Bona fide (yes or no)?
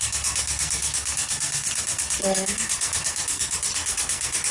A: no